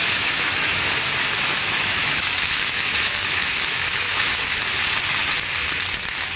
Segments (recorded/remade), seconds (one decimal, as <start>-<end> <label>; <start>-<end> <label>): 0.0-0.9 remade; 0.9-1.5 recorded; 1.5-4.6 remade; 4.6-6.4 recorded